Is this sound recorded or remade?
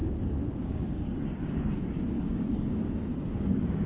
remade